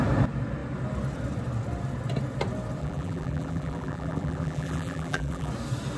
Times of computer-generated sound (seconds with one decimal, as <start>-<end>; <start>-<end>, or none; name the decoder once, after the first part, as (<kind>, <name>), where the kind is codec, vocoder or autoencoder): 2.8-5.5 (vocoder, BigVGAN v2)